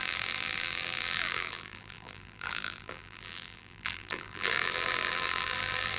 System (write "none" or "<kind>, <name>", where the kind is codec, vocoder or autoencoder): vocoder, BigVGAN v2